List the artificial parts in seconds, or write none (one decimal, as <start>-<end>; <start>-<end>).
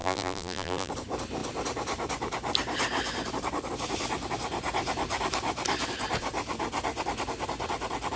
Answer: 0.0-0.9